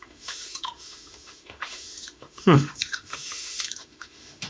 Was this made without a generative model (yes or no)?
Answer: no